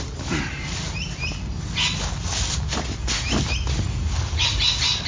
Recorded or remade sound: recorded